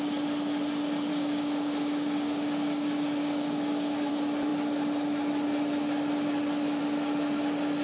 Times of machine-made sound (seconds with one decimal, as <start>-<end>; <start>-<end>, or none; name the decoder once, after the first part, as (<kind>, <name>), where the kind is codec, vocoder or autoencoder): 1.1-4.1 (codec, DAC)